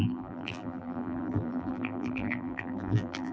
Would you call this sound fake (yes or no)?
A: yes